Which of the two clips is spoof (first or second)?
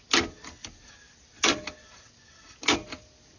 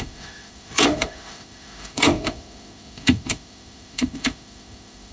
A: second